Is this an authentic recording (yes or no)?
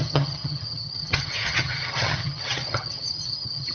no